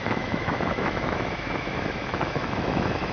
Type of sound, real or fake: fake